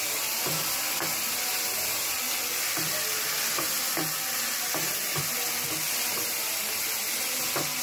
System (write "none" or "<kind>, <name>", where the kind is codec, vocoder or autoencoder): none